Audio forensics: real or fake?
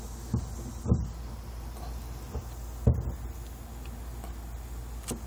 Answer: real